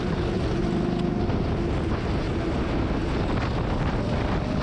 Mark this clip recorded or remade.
recorded